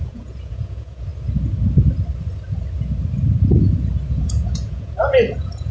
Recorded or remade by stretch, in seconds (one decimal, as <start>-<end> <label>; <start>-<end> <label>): 0.0-1.1 remade; 1.1-4.1 recorded; 4.1-5.7 remade